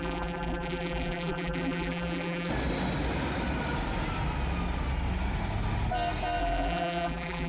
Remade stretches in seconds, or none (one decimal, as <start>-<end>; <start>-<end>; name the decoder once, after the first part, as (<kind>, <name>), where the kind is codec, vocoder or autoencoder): 0.0-2.5 (vocoder, BigVGAN v2); 6.4-7.5